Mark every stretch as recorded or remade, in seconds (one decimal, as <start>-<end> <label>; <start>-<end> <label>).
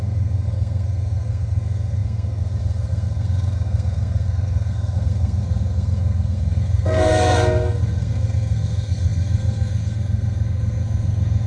0.0-11.5 remade